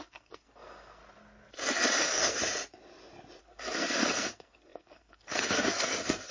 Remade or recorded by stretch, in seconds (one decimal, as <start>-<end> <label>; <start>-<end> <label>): 0.0-1.0 remade; 1.0-2.0 recorded; 2.0-2.4 remade; 2.4-3.4 recorded; 3.4-6.3 remade